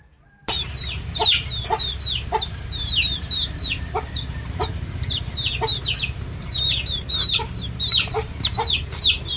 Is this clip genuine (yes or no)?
no